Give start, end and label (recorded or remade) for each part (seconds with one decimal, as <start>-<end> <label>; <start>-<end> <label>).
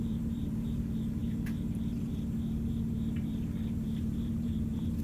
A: 0.0-5.0 remade